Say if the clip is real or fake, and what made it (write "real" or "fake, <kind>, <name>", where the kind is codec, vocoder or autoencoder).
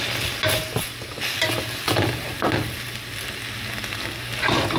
real